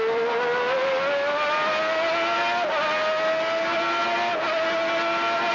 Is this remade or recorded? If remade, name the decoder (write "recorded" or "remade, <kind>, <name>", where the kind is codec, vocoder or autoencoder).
recorded